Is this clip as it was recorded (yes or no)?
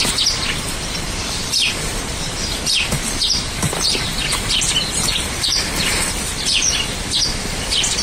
no